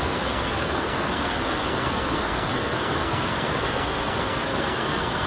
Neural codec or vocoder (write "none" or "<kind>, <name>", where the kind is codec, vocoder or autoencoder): codec, SNAC